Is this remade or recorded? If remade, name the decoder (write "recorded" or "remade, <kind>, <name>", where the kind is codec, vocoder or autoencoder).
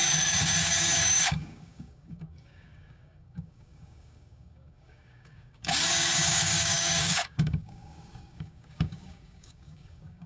remade, codec, DAC